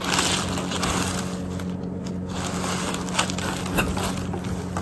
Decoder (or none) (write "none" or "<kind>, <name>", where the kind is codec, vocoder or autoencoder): none